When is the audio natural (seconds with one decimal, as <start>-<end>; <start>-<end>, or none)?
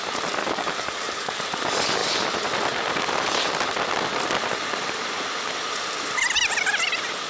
0.0-0.4; 1.4-7.3